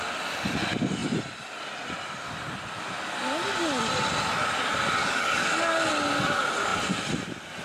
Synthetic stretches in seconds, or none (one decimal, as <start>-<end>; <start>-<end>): 5.0-5.9